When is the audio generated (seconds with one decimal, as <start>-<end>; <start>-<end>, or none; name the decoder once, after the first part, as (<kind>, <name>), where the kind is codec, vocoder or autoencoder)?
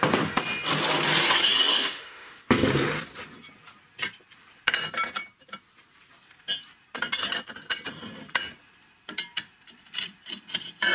1.7-2.3 (autoencoder, DAC-VAE)